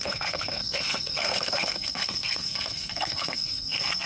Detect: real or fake fake